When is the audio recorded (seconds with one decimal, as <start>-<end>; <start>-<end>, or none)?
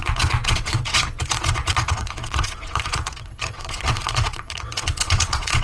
none